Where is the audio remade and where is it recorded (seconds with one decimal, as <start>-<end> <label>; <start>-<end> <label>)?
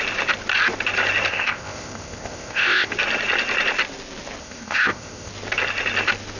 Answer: 0.0-1.3 recorded; 1.3-2.9 remade; 2.9-4.4 recorded; 4.4-5.3 remade; 5.3-6.4 recorded